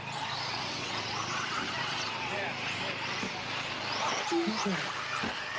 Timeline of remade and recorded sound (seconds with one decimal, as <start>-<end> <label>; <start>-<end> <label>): 0.0-0.5 recorded; 0.5-2.4 remade; 2.4-5.6 recorded